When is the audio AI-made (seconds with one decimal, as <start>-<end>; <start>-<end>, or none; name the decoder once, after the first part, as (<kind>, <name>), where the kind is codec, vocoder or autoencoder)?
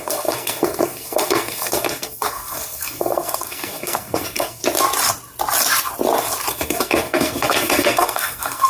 0.0-4.6 (codec, SNAC); 6.5-8.7